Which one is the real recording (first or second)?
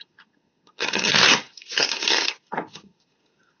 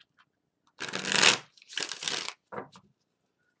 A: second